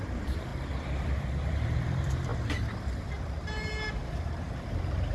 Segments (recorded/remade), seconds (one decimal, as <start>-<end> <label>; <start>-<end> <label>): 0.0-0.5 remade; 0.5-1.0 recorded; 1.0-2.3 remade; 2.3-3.1 recorded; 3.1-5.1 remade